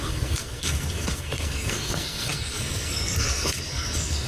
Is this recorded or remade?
remade